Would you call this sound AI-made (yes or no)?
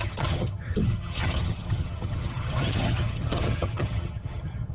yes